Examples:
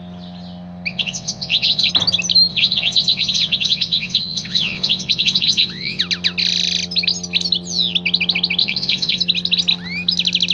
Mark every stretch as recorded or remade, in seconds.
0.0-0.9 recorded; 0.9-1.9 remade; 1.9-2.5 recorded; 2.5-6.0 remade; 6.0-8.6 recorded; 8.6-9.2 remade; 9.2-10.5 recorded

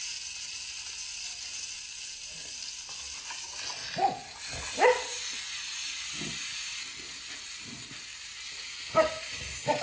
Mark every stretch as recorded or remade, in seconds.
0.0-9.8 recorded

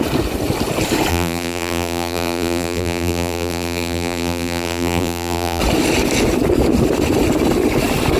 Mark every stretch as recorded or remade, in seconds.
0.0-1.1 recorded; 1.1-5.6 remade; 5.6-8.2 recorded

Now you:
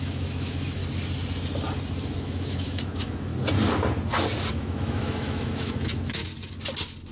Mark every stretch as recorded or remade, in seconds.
0.0-0.8 remade; 0.8-2.2 recorded; 2.2-3.3 remade; 3.3-4.5 recorded; 4.5-6.2 remade; 6.2-7.1 recorded

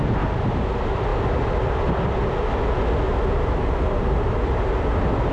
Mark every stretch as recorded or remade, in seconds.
0.0-5.3 recorded